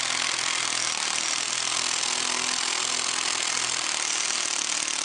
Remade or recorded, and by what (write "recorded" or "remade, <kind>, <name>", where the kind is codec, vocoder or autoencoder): recorded